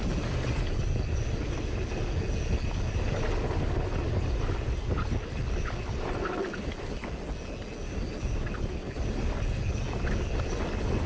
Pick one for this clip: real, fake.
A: real